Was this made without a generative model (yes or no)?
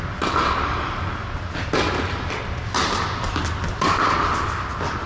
yes